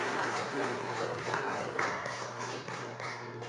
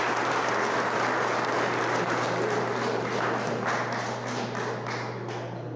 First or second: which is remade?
first